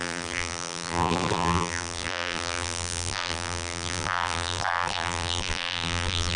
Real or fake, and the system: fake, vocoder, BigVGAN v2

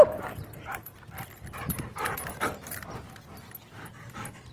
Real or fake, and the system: fake, vocoder, BigVGAN v2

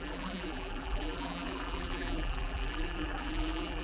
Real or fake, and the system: fake, vocoder, BigVGAN v2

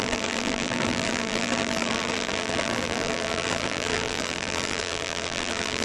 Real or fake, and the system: fake, vocoder, BigVGAN v2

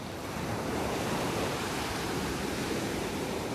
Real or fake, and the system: fake, vocoder, BigVGAN v2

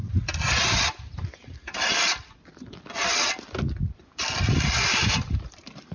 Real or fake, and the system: real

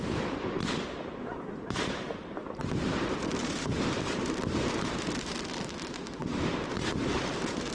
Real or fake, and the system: fake, vocoder, BigVGAN v2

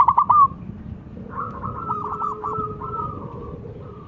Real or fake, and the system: fake, vocoder, BigVGAN v2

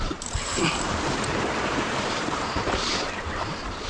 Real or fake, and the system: fake, vocoder, BigVGAN v2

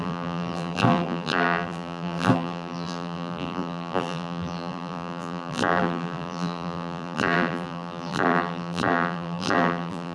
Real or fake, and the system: fake, vocoder, BigVGAN v2